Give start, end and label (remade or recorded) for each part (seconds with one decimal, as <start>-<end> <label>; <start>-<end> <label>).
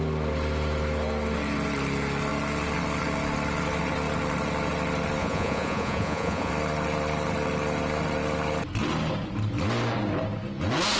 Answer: 0.0-5.2 recorded; 5.2-6.5 remade; 6.5-11.0 recorded